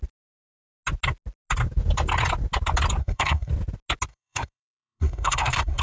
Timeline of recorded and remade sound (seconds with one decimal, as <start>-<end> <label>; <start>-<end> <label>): 0.0-3.0 recorded; 3.0-3.5 remade; 3.5-4.1 recorded; 4.1-5.8 remade

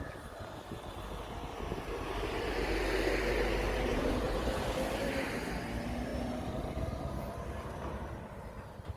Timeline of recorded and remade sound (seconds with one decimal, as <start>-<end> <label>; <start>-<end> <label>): 0.0-3.9 recorded; 3.9-4.6 remade; 4.6-9.0 recorded

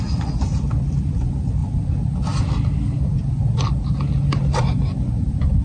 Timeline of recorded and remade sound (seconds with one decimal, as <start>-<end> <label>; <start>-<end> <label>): 0.0-5.6 recorded

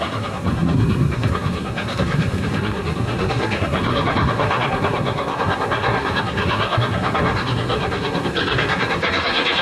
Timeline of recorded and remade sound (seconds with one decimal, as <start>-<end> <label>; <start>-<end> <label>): 0.0-9.6 remade

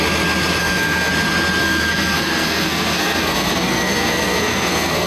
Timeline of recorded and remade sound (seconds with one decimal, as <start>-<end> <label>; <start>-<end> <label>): 0.0-0.6 recorded; 0.6-1.1 remade; 1.1-1.6 recorded; 1.6-5.1 remade

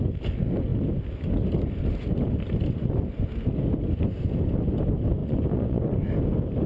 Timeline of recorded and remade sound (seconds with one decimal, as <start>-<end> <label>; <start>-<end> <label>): 0.0-5.2 recorded; 5.2-5.9 remade; 5.9-6.7 recorded

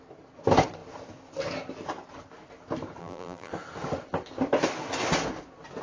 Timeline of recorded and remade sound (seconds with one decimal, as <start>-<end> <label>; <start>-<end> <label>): 0.0-3.0 recorded; 3.0-3.5 remade; 3.5-5.8 recorded

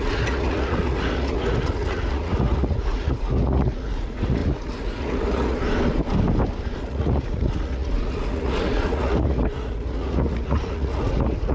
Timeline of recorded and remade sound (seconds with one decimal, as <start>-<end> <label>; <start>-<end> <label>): 0.0-5.6 remade; 5.6-6.8 recorded; 6.8-11.5 remade